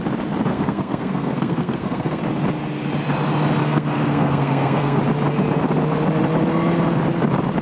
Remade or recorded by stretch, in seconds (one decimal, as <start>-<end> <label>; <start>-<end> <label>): 0.0-0.5 recorded; 0.5-2.2 remade; 2.2-3.6 recorded; 3.6-5.0 remade; 5.0-7.6 recorded